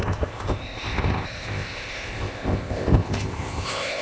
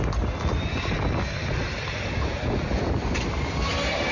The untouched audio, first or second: second